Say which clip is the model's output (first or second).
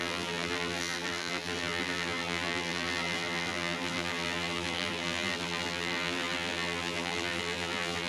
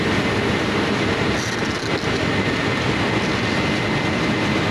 first